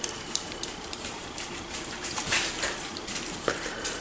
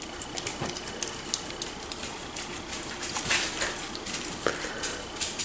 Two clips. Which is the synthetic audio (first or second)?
first